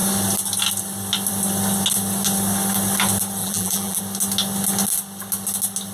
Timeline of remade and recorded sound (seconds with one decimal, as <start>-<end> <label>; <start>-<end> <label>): 0.0-3.4 recorded; 3.4-4.0 remade; 4.0-5.9 recorded

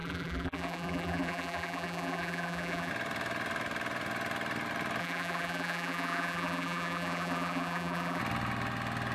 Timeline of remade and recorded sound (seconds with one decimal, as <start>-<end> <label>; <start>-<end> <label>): 0.0-2.9 remade; 2.9-5.0 recorded; 5.0-8.2 remade; 8.2-9.1 recorded

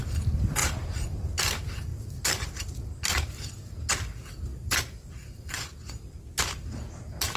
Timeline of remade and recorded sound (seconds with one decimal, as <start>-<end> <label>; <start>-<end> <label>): 0.0-0.6 recorded; 0.6-1.2 remade; 1.2-4.5 recorded; 4.5-5.1 remade; 5.1-7.4 recorded

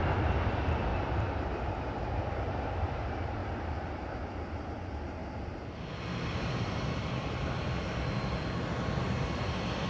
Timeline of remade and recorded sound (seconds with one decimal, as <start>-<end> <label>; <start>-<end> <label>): 0.0-0.9 recorded; 0.9-1.6 remade; 1.6-3.4 recorded; 3.4-3.9 remade; 3.9-5.2 recorded; 5.2-5.8 remade; 5.8-6.3 recorded; 6.3-8.6 remade; 8.6-9.9 recorded